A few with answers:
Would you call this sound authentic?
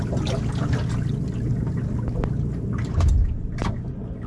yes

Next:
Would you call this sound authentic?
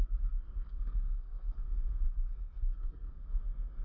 no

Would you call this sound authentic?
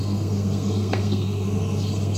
no